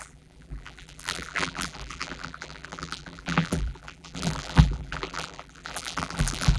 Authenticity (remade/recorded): remade